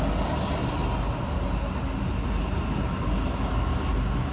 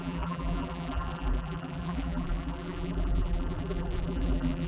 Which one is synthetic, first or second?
second